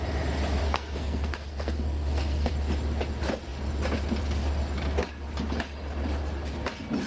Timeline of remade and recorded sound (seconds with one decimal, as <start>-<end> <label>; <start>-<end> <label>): 0.0-0.6 recorded; 0.6-2.5 remade; 2.5-7.1 recorded